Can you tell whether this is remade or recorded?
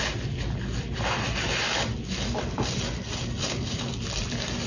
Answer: recorded